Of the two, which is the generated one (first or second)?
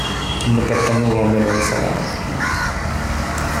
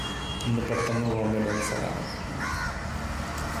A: first